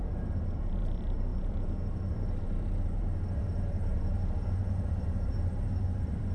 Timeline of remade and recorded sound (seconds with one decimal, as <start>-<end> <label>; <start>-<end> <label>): 0.0-6.3 remade